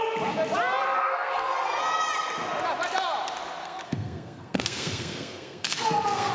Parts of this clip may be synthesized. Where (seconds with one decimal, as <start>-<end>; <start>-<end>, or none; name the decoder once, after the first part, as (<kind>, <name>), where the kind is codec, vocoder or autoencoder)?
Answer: 1.0-1.8 (codec, SNAC); 3.6-6.3